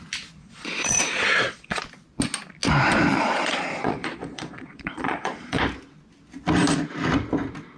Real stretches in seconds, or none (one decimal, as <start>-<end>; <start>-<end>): 0.0-0.4; 1.8-3.1; 5.6-7.8